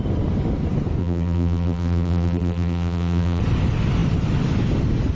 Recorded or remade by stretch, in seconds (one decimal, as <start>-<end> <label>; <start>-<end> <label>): 0.0-1.0 recorded; 1.0-3.4 remade; 3.4-5.1 recorded